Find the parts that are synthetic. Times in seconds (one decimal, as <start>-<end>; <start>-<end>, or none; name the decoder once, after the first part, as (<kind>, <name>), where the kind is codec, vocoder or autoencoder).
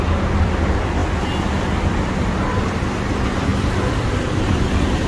0.0-1.0 (vocoder, BigVGAN v2); 1.6-5.1